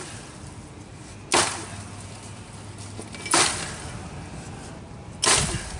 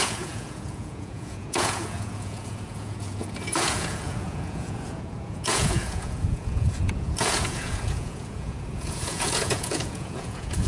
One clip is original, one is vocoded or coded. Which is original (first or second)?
first